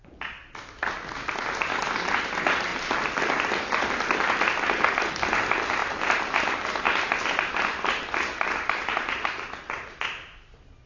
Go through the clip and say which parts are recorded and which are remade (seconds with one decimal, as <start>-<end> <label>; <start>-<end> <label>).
0.0-10.9 recorded